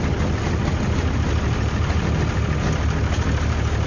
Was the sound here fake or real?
real